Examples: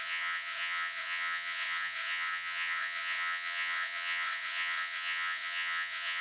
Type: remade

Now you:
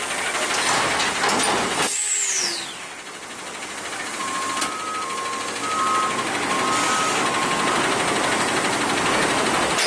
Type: recorded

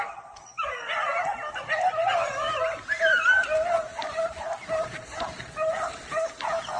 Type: recorded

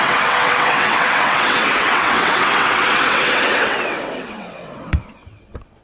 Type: remade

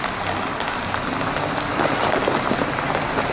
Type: recorded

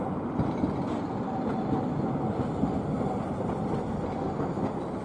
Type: recorded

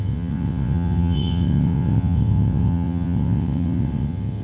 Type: remade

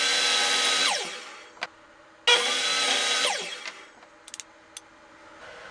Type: recorded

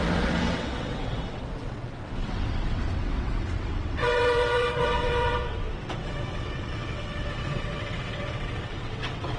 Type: remade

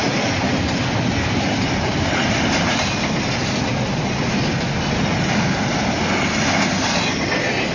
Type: recorded